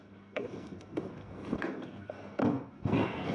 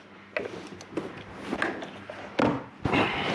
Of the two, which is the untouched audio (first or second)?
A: second